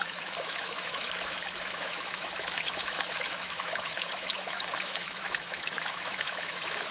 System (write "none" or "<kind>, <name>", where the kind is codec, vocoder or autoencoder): autoencoder, DAC-VAE